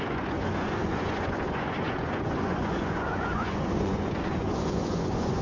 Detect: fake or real fake